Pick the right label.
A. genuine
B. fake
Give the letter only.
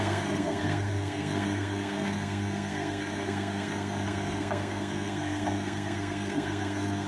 B